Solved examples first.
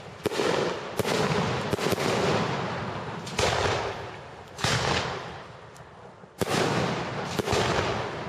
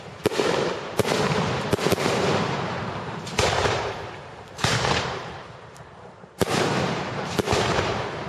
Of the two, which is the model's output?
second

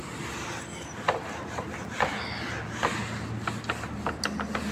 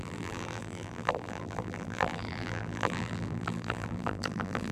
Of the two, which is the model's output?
second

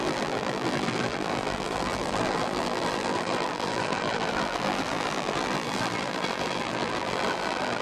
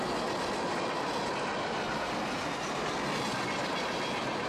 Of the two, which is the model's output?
first